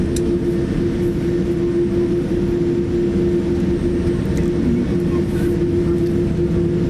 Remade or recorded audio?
recorded